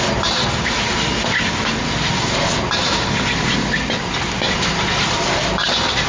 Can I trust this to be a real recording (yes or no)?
yes